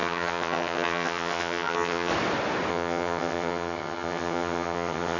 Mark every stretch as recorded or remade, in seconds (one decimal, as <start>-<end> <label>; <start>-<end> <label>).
0.0-2.1 remade; 2.1-2.7 recorded; 2.7-5.2 remade